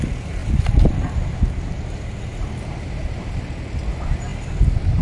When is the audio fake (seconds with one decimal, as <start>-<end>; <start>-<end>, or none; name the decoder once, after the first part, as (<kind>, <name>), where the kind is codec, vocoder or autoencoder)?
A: 0.4-3.4 (vocoder, BigVGAN v2)